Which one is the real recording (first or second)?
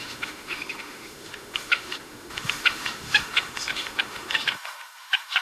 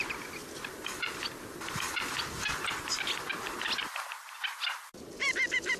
second